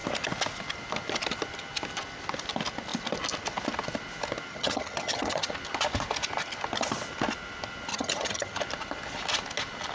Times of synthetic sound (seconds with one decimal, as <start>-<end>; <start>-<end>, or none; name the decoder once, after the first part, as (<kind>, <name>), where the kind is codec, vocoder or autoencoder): 4.5-5.5 (vocoder, HiFi-GAN); 7.9-8.6